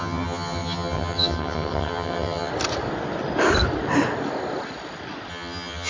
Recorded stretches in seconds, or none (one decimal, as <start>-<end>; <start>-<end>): 2.5-5.3